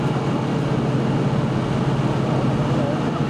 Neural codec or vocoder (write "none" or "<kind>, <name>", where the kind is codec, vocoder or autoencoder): none